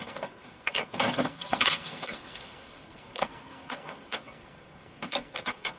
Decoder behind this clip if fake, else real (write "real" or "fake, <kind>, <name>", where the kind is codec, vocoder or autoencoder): fake, codec, SNAC